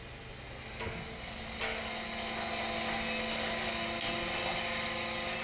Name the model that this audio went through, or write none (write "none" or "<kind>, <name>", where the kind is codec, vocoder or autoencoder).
none